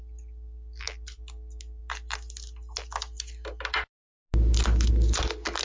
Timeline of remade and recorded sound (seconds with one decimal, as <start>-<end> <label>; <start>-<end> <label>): 0.0-5.6 recorded